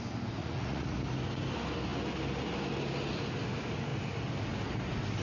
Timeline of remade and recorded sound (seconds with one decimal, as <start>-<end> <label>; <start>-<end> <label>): 0.0-0.4 recorded; 0.4-1.0 remade; 1.0-5.2 recorded